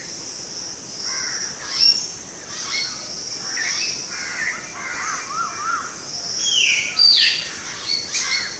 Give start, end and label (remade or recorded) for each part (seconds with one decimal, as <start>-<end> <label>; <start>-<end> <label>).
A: 0.0-8.6 recorded